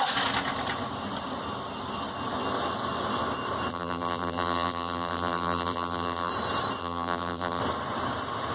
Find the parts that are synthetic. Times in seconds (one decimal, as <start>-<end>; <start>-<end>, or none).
3.7-6.3; 6.8-7.6